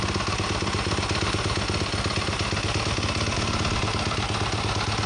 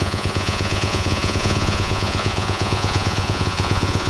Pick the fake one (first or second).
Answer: second